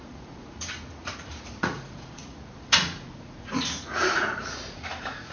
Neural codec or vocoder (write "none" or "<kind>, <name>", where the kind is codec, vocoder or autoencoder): vocoder, Vocos